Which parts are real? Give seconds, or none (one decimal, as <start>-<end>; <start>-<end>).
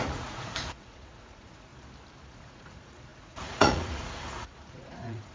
1.7-2.2